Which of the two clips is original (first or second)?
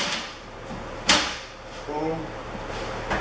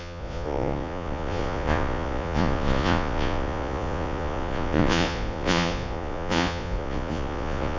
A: first